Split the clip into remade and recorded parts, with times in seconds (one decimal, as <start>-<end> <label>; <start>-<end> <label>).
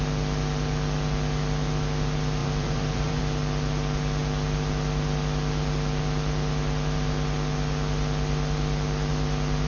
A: 0.0-2.4 recorded; 2.4-3.2 remade; 3.2-9.7 recorded